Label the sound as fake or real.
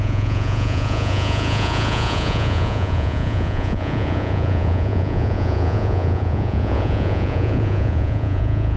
fake